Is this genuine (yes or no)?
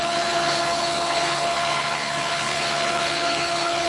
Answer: no